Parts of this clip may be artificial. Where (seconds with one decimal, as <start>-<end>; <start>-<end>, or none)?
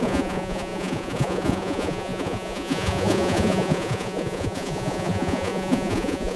0.0-6.4